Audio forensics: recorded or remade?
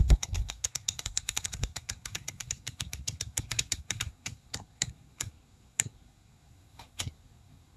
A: remade